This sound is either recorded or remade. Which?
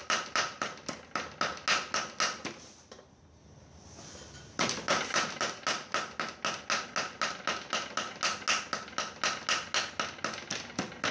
recorded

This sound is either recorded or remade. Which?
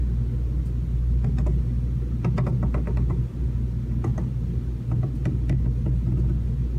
recorded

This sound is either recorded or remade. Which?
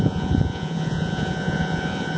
remade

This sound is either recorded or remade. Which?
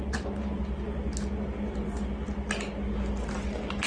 recorded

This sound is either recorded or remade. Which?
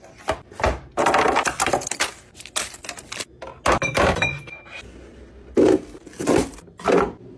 recorded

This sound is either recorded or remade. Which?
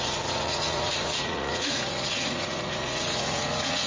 remade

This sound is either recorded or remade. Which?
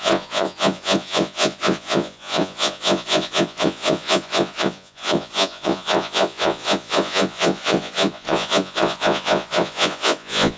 remade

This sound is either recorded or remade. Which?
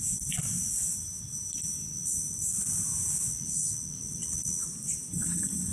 recorded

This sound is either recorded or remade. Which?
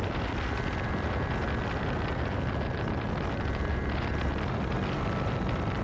recorded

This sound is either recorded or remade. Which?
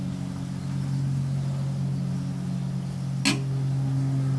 recorded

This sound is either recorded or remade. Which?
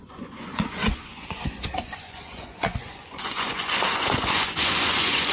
remade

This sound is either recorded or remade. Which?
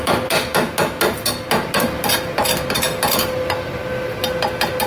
recorded